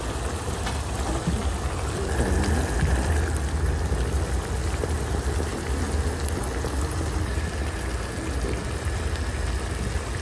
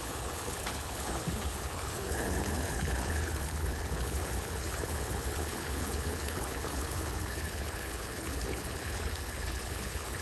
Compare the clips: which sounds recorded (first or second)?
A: first